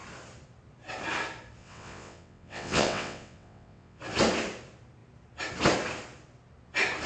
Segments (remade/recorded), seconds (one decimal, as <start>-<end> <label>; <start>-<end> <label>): 0.0-1.6 recorded; 1.6-4.0 remade; 4.0-7.1 recorded